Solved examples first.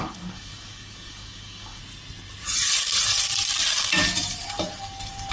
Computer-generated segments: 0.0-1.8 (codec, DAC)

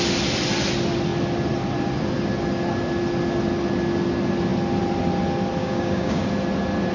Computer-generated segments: 5.6-6.3 (codec, DAC)

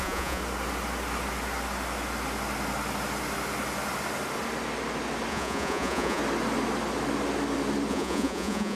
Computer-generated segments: 0.0-0.4 (vocoder, Vocos); 5.3-6.2; 7.9-8.8